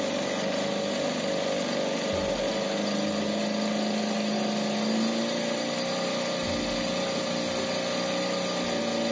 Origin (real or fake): real